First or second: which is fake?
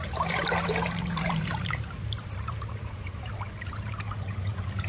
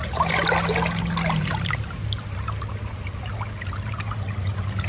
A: first